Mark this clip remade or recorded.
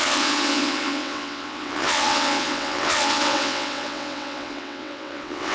remade